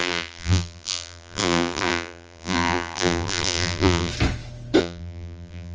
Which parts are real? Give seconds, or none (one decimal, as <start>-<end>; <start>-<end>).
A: 4.1-4.8